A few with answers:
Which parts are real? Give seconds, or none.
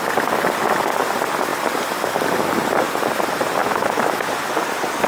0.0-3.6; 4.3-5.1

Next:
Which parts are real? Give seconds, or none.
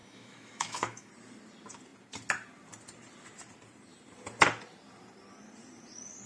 1.1-6.3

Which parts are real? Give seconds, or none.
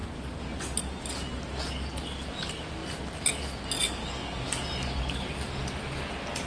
0.0-6.5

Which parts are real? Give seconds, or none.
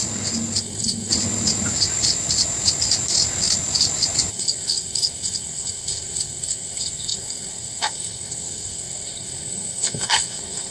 0.0-0.6; 1.1-4.3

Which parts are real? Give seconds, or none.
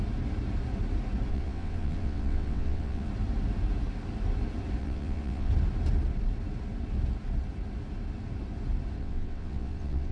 0.0-1.3; 3.1-4.8; 5.5-9.0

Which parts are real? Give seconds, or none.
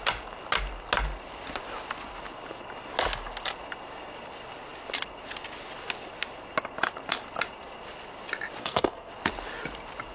0.0-8.6; 9.1-10.1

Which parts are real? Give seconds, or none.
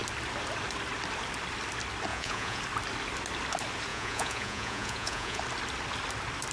0.0-2.1; 2.6-3.9; 5.4-6.5